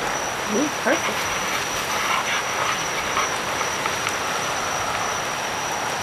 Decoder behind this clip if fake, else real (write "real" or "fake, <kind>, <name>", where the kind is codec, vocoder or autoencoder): real